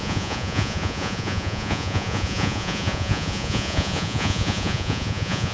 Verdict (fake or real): fake